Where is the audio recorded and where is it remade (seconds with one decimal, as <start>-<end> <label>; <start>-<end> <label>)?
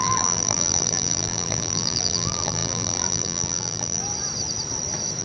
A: 0.0-4.0 remade; 4.0-5.2 recorded